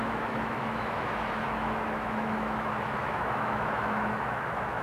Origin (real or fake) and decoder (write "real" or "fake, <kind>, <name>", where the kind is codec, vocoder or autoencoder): fake, autoencoder, DAC-VAE